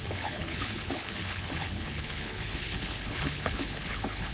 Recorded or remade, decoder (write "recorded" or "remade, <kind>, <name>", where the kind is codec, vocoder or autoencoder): remade, codec, HILCodec